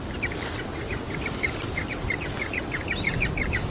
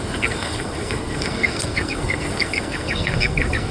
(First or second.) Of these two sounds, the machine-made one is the second